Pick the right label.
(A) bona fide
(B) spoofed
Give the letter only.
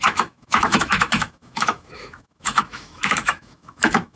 B